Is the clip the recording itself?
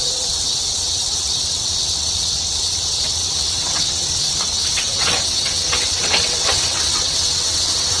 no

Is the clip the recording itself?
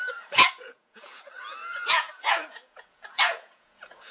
no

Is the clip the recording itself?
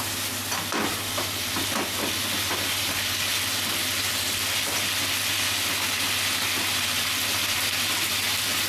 yes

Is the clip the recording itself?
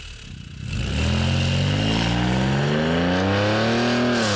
yes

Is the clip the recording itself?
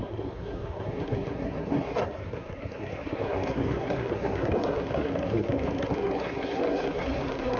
no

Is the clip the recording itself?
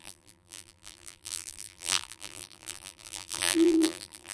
no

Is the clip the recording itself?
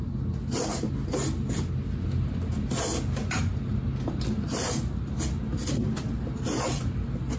yes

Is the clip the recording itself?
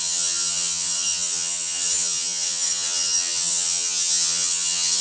no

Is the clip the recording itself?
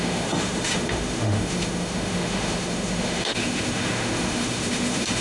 no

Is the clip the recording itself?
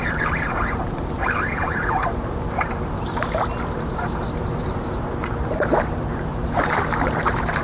no